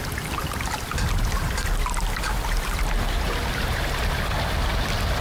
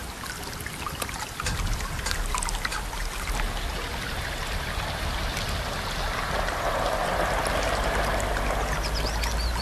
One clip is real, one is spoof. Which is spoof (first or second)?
first